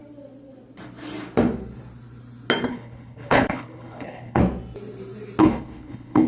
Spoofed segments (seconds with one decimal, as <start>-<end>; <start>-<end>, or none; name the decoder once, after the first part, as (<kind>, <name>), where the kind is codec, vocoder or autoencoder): 2.7-4.4 (codec, HILCodec); 5.4-6.3